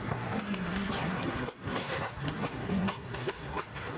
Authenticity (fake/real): fake